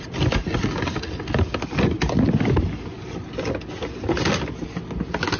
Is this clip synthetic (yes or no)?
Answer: no